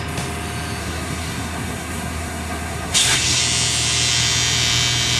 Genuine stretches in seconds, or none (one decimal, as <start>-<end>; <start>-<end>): 0.0-0.8; 3.4-5.2